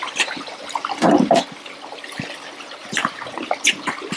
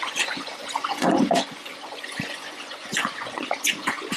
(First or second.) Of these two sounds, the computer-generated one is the second